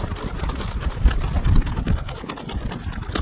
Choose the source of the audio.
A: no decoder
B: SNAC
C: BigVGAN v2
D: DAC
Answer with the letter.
A